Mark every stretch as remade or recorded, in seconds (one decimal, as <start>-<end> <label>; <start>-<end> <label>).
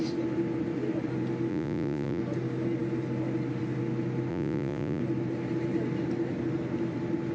0.0-1.5 recorded; 1.5-2.2 remade; 2.2-4.3 recorded; 4.3-5.0 remade; 5.0-7.3 recorded